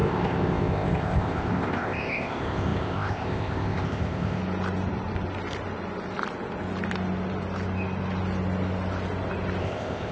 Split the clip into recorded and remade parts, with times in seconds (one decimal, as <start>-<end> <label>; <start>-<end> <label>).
0.0-4.4 remade; 4.4-9.6 recorded; 9.6-10.1 remade